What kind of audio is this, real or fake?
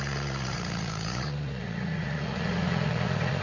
fake